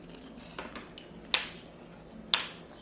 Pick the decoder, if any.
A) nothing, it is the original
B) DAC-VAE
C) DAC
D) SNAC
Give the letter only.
A